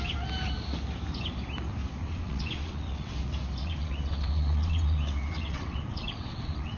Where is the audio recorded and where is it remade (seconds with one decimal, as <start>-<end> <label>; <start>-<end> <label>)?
0.0-2.0 recorded; 2.0-3.2 remade; 3.2-3.6 recorded; 3.6-6.8 remade